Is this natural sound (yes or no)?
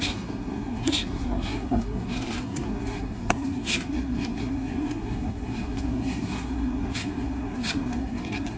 no